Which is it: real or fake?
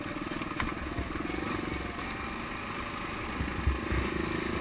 real